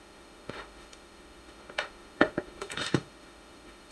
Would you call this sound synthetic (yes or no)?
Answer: yes